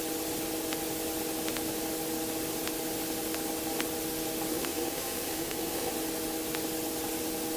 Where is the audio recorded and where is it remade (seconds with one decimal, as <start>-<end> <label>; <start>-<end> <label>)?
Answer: 0.0-4.5 recorded; 4.5-5.9 remade; 5.9-7.6 recorded